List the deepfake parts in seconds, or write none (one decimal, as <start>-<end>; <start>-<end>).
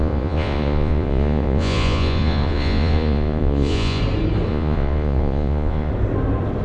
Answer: 0.0-4.0; 4.5-5.9